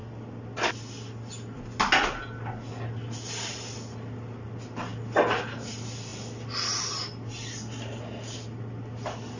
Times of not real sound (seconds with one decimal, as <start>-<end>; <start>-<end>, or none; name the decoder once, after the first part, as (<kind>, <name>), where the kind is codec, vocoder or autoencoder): none